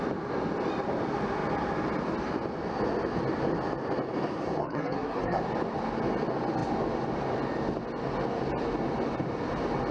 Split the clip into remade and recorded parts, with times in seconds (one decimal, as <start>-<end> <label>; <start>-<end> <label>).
0.0-4.6 recorded; 4.6-5.4 remade; 5.4-9.9 recorded